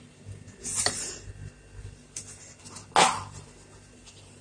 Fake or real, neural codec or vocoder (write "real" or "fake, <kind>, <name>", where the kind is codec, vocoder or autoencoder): real